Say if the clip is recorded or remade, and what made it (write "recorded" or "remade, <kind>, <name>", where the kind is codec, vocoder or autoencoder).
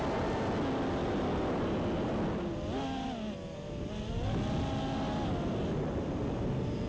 recorded